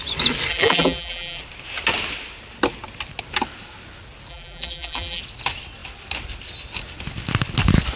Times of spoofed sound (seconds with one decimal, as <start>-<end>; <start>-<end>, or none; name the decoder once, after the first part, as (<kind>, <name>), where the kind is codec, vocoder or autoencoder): 0.5-1.4 (vocoder, BigVGAN v2); 4.3-5.2